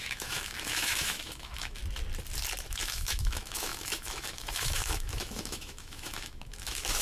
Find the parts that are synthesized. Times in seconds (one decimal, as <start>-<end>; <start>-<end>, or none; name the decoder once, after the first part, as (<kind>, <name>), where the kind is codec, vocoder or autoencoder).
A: 0.0-1.8 (autoencoder, DAC-VAE); 2.7-7.0